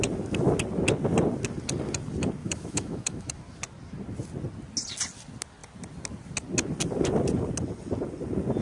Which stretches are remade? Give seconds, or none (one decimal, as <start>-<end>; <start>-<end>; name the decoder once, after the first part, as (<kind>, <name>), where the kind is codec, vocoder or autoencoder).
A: 2.4-3.3 (autoencoder, DAC-VAE)